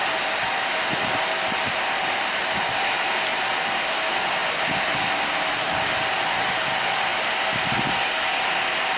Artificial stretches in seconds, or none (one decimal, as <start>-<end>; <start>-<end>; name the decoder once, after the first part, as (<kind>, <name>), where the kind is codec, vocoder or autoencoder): 4.4-5.1 (vocoder, BigVGAN v2); 7.1-7.8